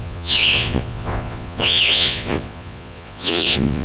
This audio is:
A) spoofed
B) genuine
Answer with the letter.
A